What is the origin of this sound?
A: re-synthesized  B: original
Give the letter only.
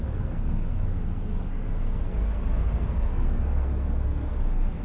A